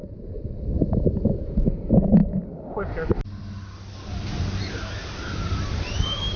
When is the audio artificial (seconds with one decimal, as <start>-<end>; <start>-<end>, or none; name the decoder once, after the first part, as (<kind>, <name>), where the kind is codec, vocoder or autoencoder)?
none